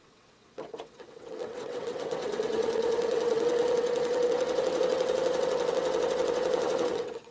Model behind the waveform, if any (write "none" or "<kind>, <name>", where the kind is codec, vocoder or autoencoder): vocoder, WaveNeXt